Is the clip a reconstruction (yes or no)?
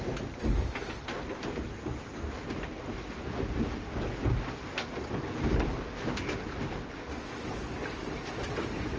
no